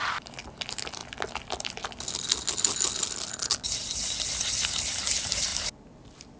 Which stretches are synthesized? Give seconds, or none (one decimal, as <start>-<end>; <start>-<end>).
none